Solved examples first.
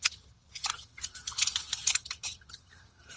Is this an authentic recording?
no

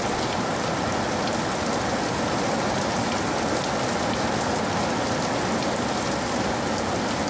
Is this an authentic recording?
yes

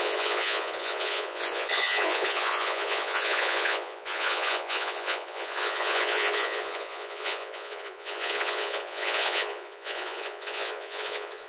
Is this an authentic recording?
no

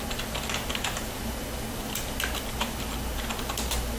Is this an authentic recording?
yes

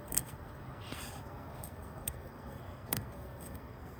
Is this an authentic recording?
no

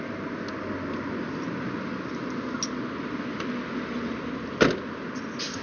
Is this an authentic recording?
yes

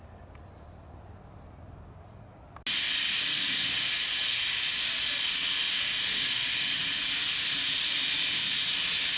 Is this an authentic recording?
yes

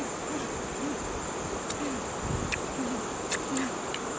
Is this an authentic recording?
yes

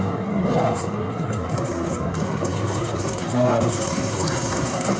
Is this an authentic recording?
no